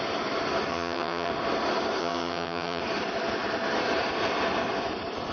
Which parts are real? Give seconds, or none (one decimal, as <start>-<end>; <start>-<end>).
0.0-0.7; 1.3-2.0; 2.8-5.3